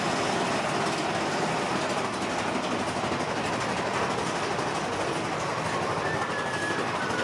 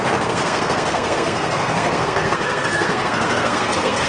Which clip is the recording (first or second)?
first